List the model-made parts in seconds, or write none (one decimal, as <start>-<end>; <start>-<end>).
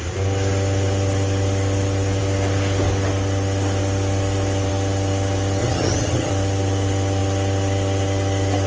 5.6-6.3